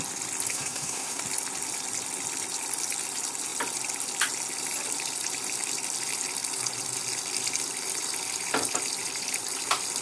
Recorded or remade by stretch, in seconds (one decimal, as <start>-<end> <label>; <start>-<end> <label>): 0.0-0.5 recorded; 0.5-1.2 remade; 1.2-10.0 recorded